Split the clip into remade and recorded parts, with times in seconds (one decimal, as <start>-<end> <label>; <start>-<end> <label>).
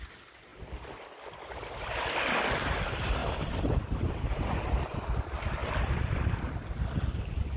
0.0-3.2 recorded; 3.2-4.6 remade; 4.6-7.6 recorded